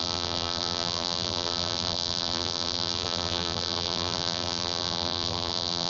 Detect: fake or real fake